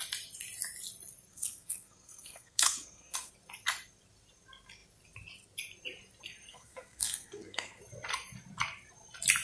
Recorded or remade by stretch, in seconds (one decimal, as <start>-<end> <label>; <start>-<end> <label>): 0.0-1.3 recorded; 1.3-3.3 remade; 3.3-6.5 recorded; 6.5-7.8 remade; 7.8-9.4 recorded

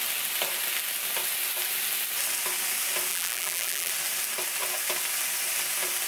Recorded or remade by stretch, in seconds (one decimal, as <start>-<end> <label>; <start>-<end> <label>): 0.0-3.1 recorded; 3.1-3.9 remade; 3.9-6.1 recorded